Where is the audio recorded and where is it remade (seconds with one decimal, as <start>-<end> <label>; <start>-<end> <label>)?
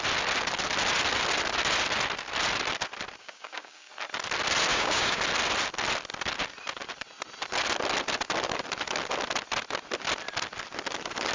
0.0-3.2 recorded; 3.2-3.9 remade; 3.9-4.7 recorded; 4.7-5.2 remade; 5.2-11.3 recorded